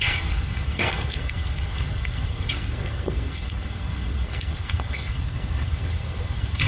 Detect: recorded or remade remade